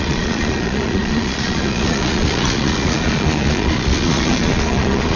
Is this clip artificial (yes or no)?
yes